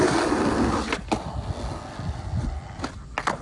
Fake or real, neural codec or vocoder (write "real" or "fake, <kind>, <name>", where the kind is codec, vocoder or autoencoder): real